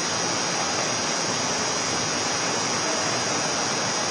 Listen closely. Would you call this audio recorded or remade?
recorded